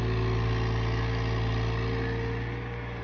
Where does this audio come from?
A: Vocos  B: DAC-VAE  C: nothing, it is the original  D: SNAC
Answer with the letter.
C